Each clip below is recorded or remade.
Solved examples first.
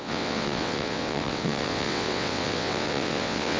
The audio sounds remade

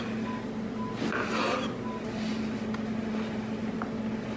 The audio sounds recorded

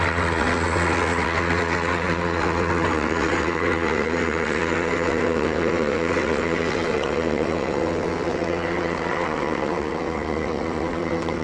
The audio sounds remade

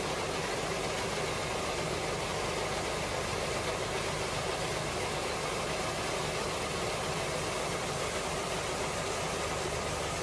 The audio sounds recorded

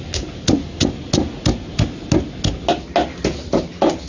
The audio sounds recorded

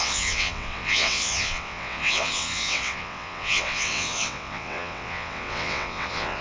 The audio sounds remade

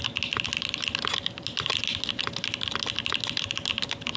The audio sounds recorded